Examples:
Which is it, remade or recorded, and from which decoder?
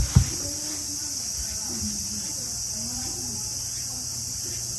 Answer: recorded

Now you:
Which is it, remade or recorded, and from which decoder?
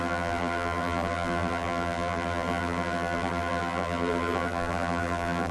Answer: remade, vocoder, BigVGAN v2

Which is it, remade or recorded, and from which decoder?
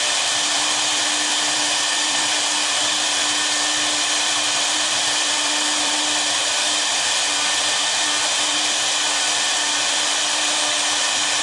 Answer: remade, vocoder, BigVGAN v2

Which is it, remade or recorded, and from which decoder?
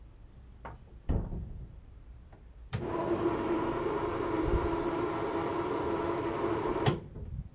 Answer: remade, vocoder, BigVGAN v2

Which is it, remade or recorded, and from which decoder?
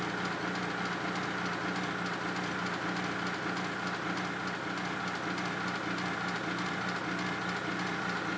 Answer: recorded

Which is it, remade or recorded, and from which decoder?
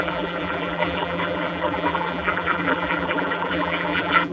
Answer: remade, vocoder, BigVGAN v2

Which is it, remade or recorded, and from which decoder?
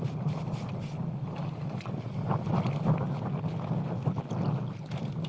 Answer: recorded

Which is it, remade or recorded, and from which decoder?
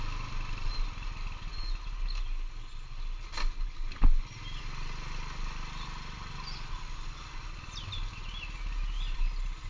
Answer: recorded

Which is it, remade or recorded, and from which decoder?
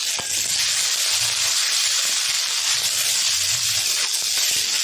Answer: recorded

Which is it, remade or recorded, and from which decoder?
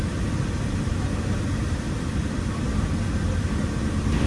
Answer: remade, vocoder, BigVGAN v2